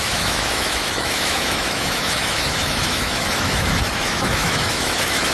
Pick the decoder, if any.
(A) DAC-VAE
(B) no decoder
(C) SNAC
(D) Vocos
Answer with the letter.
A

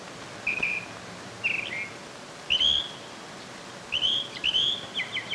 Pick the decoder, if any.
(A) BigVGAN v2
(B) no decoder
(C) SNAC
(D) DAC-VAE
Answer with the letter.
B